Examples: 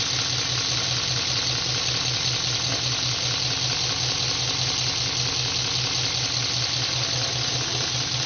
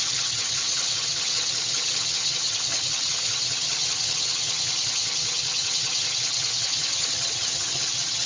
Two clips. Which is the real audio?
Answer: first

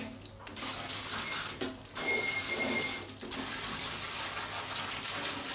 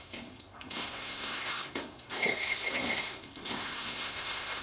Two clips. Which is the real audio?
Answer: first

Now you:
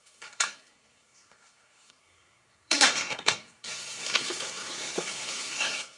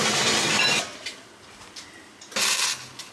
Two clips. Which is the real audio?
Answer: second